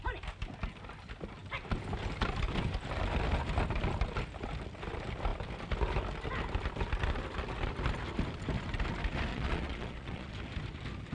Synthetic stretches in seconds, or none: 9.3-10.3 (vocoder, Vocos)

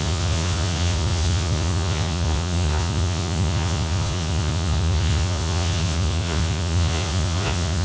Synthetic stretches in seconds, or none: 0.0-7.8 (vocoder, Vocos)

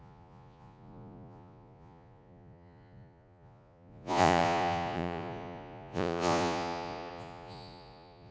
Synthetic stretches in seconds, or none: 0.0-8.3 (vocoder, Vocos)

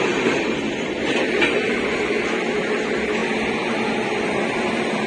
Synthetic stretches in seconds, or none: none

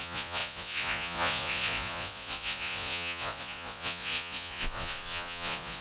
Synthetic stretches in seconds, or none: 0.0-5.8 (vocoder, Vocos)